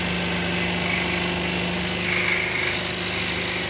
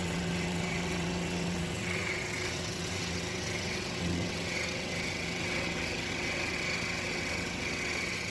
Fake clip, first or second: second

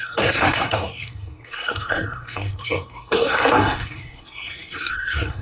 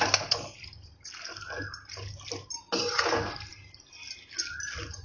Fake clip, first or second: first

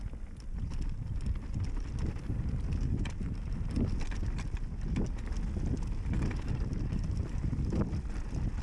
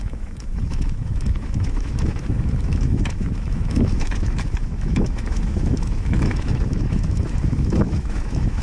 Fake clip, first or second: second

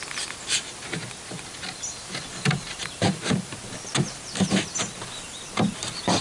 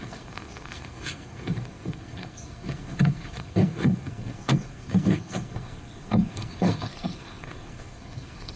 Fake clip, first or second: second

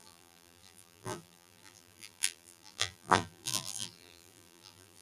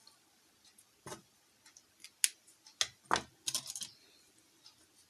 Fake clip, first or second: first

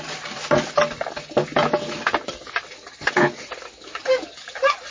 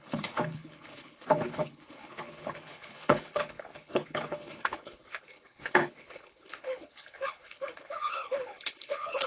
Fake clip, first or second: second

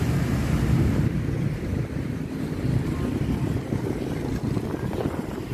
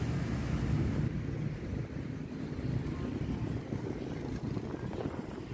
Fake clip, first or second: first